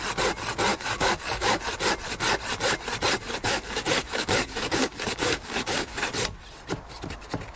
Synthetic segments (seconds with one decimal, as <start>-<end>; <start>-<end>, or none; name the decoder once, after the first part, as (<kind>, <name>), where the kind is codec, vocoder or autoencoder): 0.7-1.6 (codec, DAC); 3.4-6.0

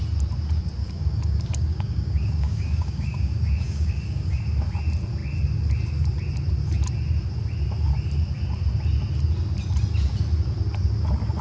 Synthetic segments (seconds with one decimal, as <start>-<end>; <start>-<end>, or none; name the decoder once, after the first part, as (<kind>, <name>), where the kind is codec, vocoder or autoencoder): 0.8-4.4 (codec, DAC)

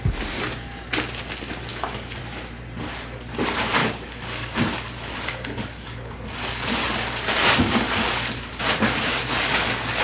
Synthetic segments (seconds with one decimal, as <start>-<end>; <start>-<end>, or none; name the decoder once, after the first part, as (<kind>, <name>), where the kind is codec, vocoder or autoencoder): 1.7-2.2 (codec, DAC); 3.8-8.6; 9.1-10.0